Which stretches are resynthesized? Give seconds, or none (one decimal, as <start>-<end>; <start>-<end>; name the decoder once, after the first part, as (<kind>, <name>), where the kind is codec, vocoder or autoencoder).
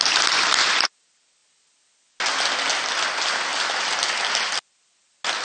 none